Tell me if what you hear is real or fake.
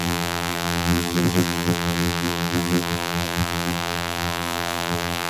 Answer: fake